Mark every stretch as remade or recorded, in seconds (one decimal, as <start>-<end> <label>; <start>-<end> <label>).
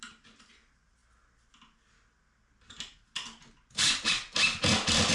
0.0-5.1 recorded